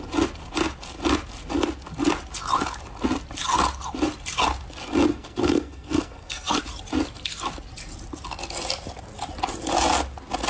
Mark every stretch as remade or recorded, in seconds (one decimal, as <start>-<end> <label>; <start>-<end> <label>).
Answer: 0.0-5.1 recorded; 5.1-6.6 remade; 6.6-10.5 recorded